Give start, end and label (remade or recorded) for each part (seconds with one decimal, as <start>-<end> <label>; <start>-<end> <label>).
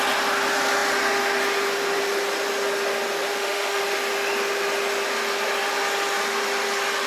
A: 0.0-3.3 recorded; 3.3-3.8 remade; 3.8-7.1 recorded